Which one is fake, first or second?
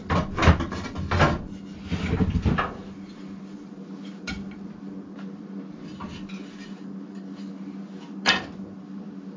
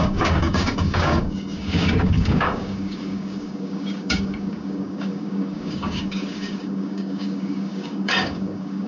second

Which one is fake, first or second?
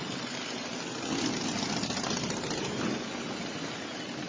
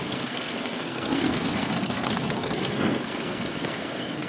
second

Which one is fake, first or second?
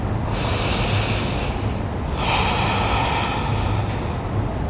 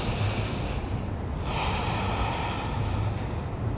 second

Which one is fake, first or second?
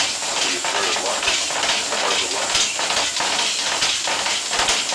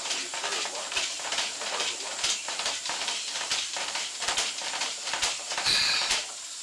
second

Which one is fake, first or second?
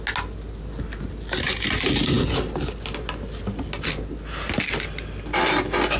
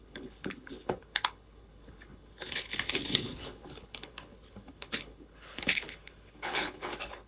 second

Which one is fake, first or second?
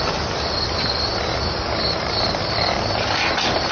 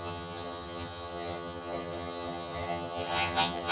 second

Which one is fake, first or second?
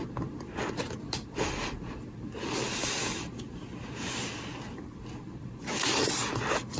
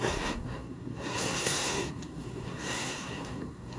second